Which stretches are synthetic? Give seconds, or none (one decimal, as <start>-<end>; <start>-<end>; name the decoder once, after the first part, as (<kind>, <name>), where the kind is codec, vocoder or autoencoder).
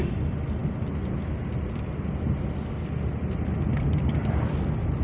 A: none